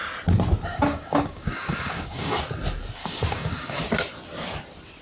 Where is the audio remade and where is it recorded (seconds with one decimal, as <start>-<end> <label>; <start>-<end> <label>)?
0.0-0.7 recorded; 0.7-2.4 remade; 2.4-3.0 recorded; 3.0-3.8 remade; 3.8-5.0 recorded